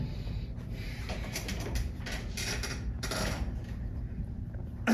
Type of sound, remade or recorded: remade